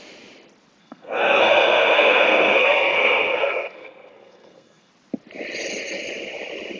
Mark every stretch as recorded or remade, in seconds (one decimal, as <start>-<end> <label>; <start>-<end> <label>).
0.0-0.8 recorded; 0.8-4.9 remade; 4.9-6.8 recorded